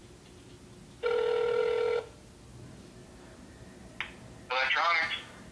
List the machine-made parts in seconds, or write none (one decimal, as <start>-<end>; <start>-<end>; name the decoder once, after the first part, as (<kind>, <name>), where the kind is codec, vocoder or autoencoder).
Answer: none